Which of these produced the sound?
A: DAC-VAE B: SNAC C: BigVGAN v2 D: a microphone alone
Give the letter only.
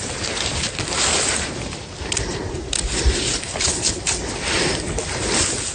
D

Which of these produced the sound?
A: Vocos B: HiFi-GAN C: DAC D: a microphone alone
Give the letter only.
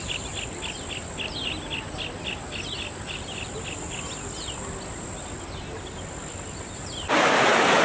D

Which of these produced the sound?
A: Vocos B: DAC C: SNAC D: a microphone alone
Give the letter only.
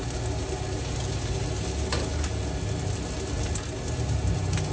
D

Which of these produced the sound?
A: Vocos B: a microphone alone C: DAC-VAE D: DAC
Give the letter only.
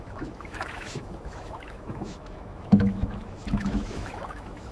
C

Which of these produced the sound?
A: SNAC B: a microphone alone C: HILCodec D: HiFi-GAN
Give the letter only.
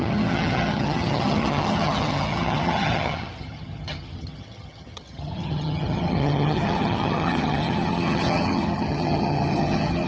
D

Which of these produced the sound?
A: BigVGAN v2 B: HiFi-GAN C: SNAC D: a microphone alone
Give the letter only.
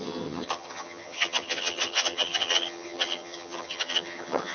B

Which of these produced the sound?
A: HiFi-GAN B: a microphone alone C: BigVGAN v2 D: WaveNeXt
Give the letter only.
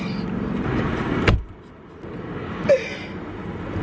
B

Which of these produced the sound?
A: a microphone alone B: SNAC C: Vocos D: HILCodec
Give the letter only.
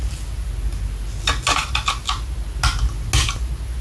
A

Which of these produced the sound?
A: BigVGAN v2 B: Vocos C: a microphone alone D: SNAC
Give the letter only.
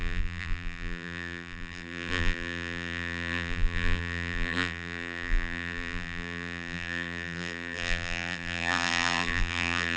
A